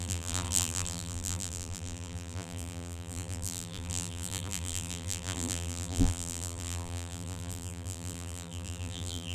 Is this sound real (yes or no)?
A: no